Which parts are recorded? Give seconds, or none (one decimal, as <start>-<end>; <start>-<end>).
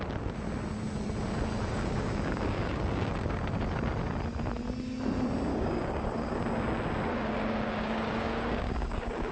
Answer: 0.0-1.6; 3.4-5.5; 6.4-7.1